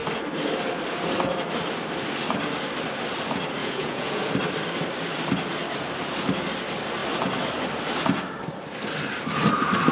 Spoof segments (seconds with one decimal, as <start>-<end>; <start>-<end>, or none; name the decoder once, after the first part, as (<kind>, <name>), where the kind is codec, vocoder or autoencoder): 3.6-4.2 (vocoder, Vocos)